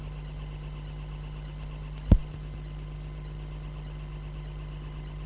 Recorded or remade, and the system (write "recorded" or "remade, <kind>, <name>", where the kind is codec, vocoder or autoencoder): recorded